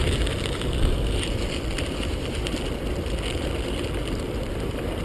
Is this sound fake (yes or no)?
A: no